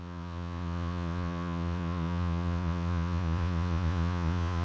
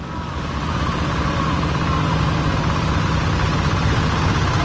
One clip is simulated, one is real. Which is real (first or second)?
second